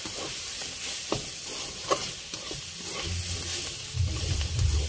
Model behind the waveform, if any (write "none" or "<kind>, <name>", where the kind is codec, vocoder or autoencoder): none